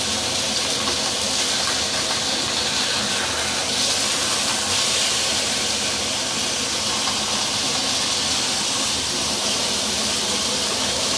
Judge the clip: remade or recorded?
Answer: recorded